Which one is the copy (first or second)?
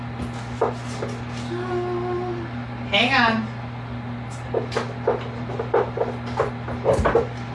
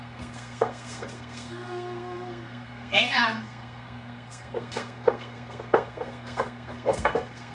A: second